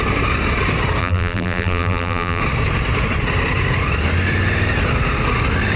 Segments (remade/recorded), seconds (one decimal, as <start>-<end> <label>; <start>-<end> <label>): 0.0-1.0 recorded; 1.0-2.4 remade; 2.4-5.8 recorded